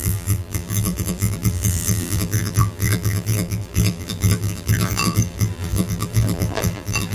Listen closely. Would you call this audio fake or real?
fake